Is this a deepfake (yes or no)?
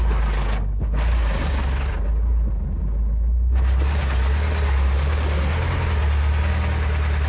no